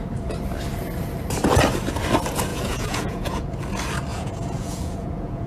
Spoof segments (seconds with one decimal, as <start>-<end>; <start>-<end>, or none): 2.5-3.5; 4.1-5.5